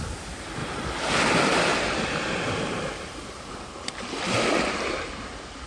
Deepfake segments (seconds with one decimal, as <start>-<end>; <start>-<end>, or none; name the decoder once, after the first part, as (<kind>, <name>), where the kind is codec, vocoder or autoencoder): 0.6-1.1 (vocoder, BigVGAN v2); 1.7-5.1